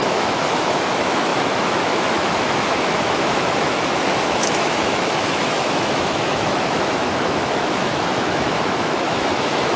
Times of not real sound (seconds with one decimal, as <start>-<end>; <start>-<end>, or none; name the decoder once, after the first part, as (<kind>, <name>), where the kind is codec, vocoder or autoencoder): 0.0-9.8 (autoencoder, DAC-VAE)